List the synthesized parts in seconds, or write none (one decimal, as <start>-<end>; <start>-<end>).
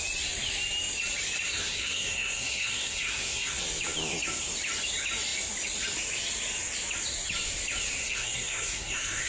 1.6-3.6; 8.0-9.3